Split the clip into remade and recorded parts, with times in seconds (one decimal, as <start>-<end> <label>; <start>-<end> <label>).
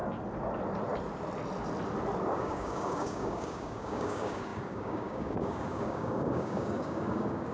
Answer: 0.0-2.3 recorded; 2.3-7.5 remade